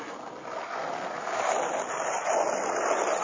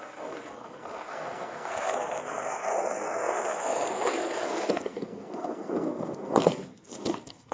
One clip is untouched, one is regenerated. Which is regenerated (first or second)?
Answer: second